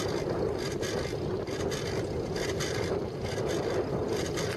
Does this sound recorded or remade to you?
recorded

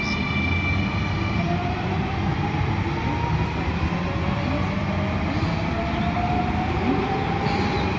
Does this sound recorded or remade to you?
recorded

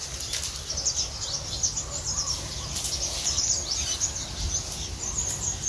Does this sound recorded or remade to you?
recorded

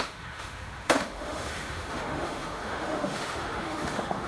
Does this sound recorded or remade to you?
remade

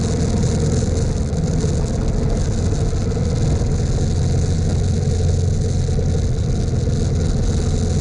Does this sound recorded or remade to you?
recorded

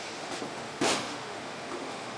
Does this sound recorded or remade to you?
remade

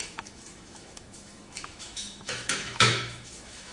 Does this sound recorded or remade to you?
remade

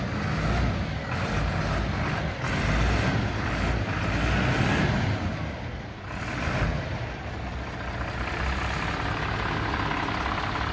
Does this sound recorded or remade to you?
recorded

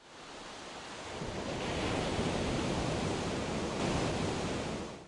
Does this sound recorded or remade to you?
recorded